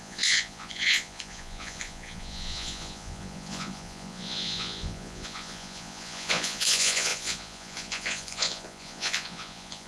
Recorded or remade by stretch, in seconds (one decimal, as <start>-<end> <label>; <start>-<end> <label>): 0.0-9.9 remade